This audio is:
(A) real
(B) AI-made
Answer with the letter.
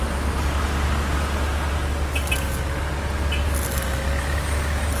A